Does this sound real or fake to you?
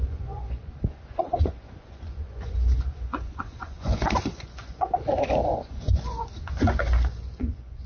fake